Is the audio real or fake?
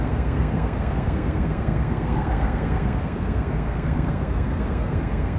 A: fake